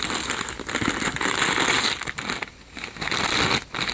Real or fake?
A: real